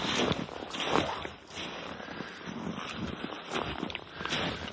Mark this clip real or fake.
real